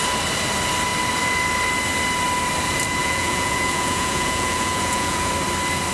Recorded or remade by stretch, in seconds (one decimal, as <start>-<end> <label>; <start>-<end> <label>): 0.0-3.0 recorded; 3.0-5.3 remade; 5.3-5.9 recorded